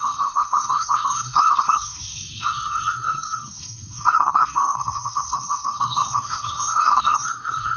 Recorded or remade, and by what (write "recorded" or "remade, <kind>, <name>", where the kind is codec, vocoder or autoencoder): remade, codec, SNAC